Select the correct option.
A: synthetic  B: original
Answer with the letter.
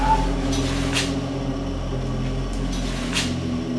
B